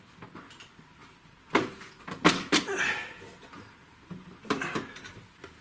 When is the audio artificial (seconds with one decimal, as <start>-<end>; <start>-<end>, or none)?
none